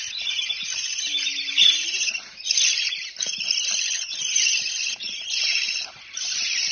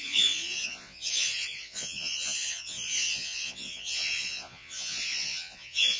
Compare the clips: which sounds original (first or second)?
first